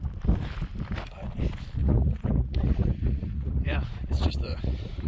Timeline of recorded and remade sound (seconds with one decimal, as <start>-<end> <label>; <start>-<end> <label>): 0.0-1.8 recorded; 1.8-5.1 remade